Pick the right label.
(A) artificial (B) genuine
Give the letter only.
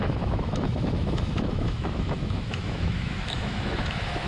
A